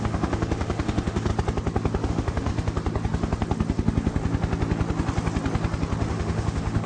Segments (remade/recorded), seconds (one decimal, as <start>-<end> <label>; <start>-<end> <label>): 0.0-1.3 remade; 1.3-2.1 recorded; 2.1-2.5 remade; 2.5-6.1 recorded; 6.1-6.9 remade